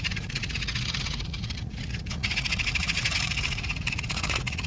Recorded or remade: remade